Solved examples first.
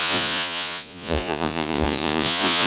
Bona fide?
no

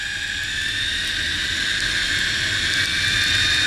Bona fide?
yes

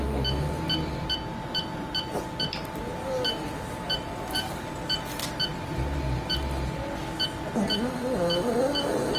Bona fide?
yes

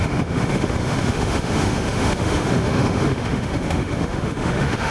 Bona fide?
no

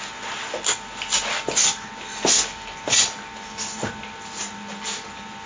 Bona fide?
yes